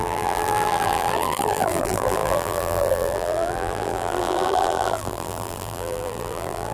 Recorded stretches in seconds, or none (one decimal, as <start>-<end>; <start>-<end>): none